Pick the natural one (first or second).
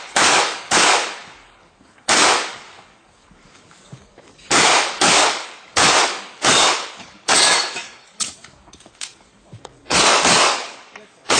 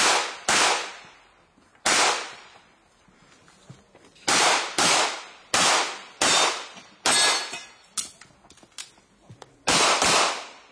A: second